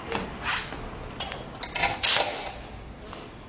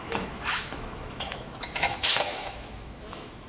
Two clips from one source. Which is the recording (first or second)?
first